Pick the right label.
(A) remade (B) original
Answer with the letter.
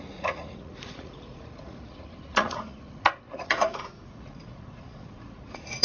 A